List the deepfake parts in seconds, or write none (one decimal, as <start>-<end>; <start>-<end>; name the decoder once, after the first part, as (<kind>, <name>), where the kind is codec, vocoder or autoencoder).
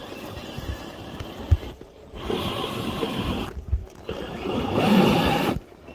3.8-5.0 (vocoder, BigVGAN v2)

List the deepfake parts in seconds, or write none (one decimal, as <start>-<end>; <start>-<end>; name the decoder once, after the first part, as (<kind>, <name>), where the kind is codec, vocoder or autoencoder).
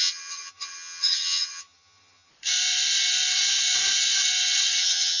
0.0-2.3 (vocoder, HiFi-GAN); 4.8-5.2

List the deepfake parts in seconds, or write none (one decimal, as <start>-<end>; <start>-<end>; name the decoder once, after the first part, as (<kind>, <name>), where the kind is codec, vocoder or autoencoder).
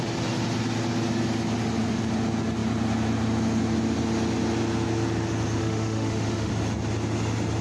5.6-6.5 (autoencoder, DAC-VAE)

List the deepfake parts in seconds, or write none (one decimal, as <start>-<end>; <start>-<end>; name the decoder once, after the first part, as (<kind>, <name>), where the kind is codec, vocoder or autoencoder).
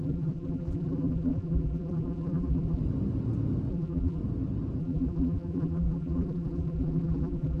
0.0-2.8 (vocoder, BigVGAN v2); 3.7-4.2; 4.8-7.6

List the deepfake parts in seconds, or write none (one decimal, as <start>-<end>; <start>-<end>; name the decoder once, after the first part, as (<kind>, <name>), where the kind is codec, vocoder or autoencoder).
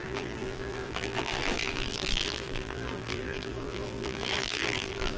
0.0-5.2 (vocoder, BigVGAN v2)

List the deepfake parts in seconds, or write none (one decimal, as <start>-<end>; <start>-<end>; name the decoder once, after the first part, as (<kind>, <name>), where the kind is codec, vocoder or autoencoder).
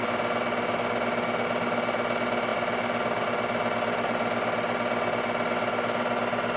none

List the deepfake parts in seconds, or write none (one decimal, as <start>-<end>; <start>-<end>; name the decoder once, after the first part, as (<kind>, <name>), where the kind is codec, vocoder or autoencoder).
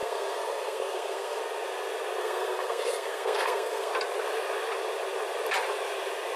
0.0-1.4 (codec, SNAC); 2.2-3.9